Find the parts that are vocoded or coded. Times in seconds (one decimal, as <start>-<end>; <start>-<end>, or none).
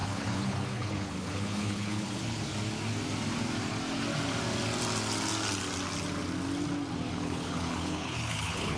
0.0-2.5; 7.1-8.8